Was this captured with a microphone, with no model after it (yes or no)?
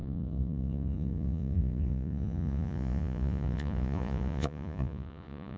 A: no